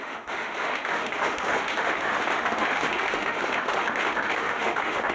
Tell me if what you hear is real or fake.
fake